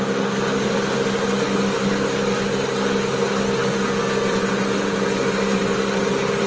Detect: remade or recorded recorded